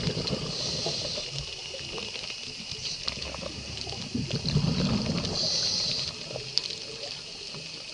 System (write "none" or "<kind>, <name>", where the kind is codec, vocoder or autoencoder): none